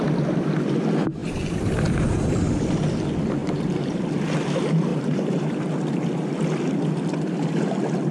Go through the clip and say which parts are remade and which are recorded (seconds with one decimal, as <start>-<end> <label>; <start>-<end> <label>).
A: 0.0-3.4 recorded; 3.4-4.0 remade; 4.0-4.9 recorded; 4.9-5.6 remade; 5.6-8.1 recorded